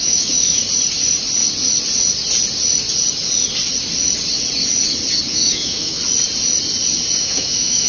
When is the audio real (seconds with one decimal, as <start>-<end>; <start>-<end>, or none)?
0.6-5.3; 6.0-7.2